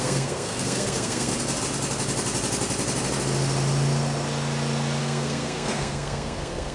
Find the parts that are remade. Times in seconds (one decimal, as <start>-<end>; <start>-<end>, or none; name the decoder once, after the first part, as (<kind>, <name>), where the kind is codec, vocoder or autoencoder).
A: 0.0-1.3 (codec, SNAC); 5.0-6.7